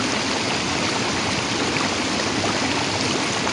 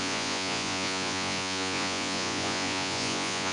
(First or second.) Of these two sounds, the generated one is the second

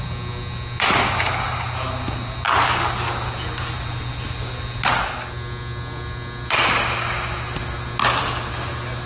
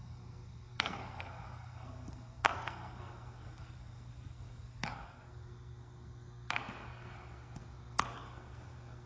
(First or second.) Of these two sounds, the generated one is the second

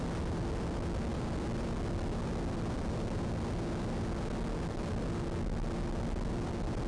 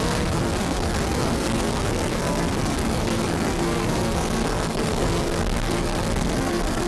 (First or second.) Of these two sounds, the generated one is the second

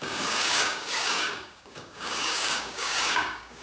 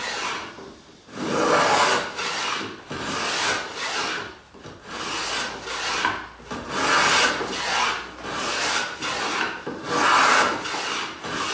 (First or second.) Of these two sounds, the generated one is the first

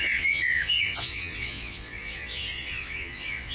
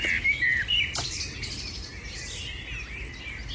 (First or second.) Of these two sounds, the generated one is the first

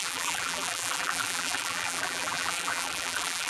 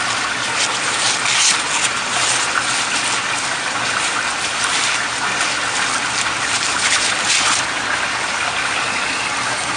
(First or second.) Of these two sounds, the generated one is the first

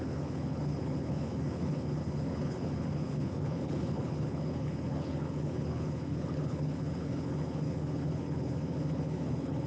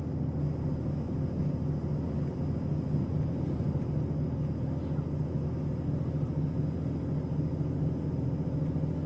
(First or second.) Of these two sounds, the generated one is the first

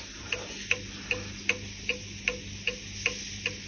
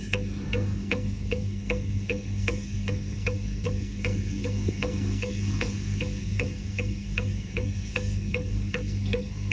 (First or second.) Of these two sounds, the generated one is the second